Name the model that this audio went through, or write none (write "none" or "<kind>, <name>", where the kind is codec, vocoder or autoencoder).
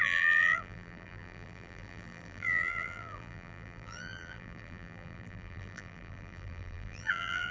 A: vocoder, BigVGAN v2